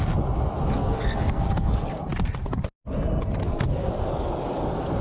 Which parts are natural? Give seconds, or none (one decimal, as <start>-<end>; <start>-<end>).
0.0-0.8; 1.7-3.4; 3.9-5.0